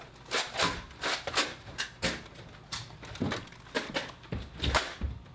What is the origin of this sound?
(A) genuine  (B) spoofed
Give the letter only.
A